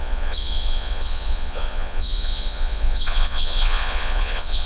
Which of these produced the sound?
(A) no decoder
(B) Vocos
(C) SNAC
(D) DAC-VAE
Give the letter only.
B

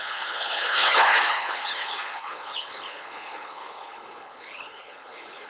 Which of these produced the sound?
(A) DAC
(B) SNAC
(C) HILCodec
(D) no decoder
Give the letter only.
C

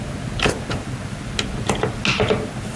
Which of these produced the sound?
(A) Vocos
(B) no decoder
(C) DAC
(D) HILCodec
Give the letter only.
B